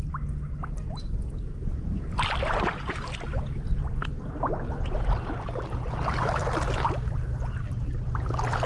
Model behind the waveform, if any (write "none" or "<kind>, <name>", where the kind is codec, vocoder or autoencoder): none